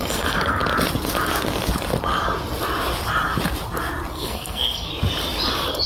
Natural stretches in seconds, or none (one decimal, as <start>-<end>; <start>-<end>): 0.6-4.1; 4.9-5.9